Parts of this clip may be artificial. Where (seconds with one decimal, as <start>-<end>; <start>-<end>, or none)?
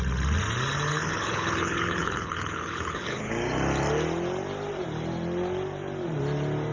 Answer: 0.9-3.3